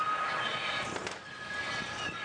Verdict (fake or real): real